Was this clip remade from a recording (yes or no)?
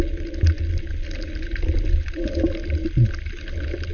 no